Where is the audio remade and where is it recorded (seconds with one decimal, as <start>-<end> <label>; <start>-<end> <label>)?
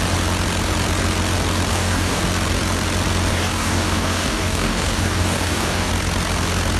0.0-1.7 recorded; 1.7-2.2 remade; 2.2-3.3 recorded; 3.3-5.9 remade; 5.9-6.8 recorded